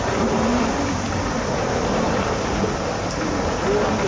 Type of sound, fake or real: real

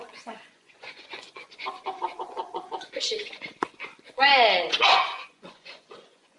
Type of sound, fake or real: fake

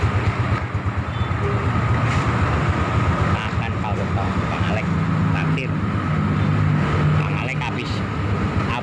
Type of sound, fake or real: real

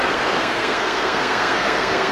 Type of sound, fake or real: fake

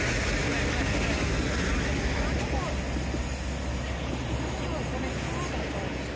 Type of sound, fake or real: real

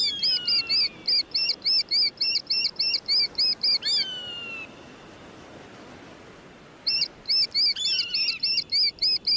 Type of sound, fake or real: real